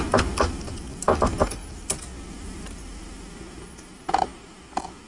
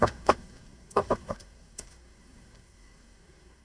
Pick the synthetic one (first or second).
second